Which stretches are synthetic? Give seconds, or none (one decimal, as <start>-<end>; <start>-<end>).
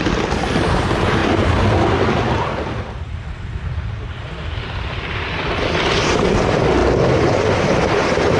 none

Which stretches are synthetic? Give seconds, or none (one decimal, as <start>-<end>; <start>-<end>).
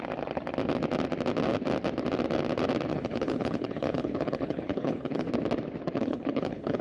2.9-5.3; 6.0-6.8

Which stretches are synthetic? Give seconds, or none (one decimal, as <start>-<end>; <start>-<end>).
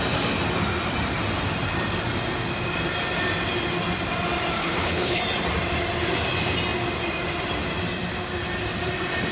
4.6-5.2